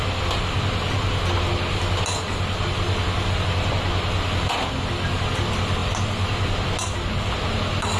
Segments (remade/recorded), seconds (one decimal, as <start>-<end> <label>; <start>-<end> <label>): 0.0-8.0 recorded